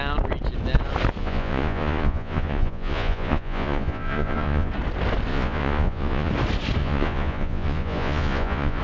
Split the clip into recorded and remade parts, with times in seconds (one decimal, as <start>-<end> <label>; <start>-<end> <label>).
0.0-1.2 recorded; 1.2-4.7 remade; 4.7-5.3 recorded; 5.3-6.3 remade; 6.3-6.8 recorded; 6.8-8.8 remade